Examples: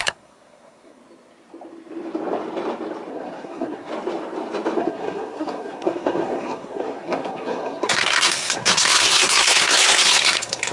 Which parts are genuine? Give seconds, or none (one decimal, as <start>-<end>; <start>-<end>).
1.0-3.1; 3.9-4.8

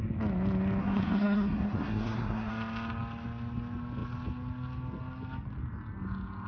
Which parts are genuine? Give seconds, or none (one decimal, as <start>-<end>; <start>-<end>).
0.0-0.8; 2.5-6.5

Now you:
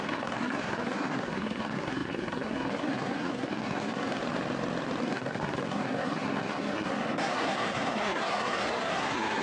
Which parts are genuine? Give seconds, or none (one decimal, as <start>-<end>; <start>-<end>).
4.2-5.0

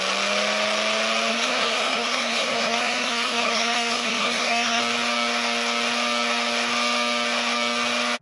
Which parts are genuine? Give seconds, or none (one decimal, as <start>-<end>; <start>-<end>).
0.0-1.3; 4.8-8.2

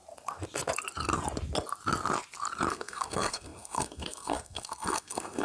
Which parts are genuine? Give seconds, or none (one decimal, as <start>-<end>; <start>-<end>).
0.0-2.7

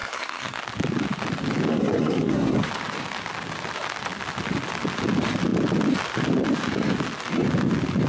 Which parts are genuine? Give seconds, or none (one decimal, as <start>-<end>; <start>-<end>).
0.6-1.7; 2.7-8.1